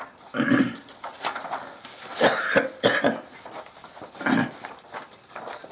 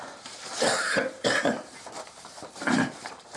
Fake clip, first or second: second